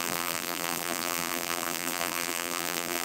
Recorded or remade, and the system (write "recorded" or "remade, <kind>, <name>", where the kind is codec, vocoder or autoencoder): remade, vocoder, BigVGAN v2